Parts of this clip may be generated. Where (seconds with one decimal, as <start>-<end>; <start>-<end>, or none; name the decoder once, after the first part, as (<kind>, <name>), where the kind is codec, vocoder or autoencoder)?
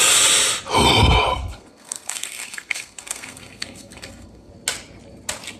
1.3-4.5 (codec, SNAC)